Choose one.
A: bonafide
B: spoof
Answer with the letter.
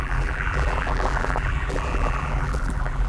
B